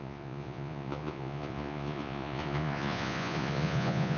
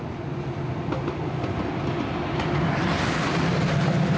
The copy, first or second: first